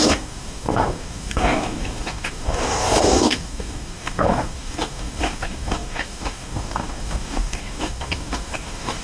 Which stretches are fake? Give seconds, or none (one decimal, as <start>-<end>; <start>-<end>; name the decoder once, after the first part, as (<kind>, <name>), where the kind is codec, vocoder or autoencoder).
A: 0.0-9.0 (codec, DAC)

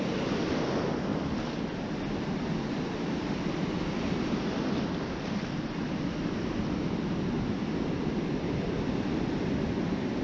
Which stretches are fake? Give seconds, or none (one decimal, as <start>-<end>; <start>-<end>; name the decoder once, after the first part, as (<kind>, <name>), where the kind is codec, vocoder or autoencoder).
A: none

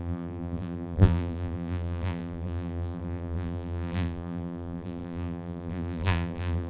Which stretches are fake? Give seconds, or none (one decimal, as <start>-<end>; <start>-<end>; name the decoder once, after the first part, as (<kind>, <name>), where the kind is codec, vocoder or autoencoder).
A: 0.0-6.7 (vocoder, BigVGAN v2)

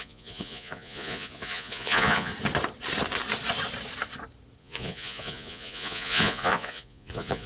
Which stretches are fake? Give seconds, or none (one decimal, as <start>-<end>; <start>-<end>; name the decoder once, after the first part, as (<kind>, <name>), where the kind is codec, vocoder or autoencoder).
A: 0.0-2.3 (vocoder, Vocos); 4.6-7.5

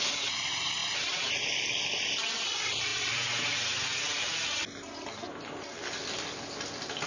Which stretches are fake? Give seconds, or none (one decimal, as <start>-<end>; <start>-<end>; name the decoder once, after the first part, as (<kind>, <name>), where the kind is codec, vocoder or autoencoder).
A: none